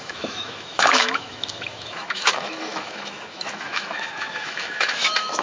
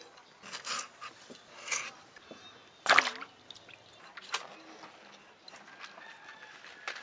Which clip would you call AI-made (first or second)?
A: first